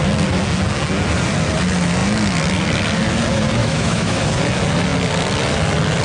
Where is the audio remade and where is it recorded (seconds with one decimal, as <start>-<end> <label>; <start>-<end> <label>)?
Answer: 0.0-3.6 recorded; 3.6-4.3 remade; 4.3-6.0 recorded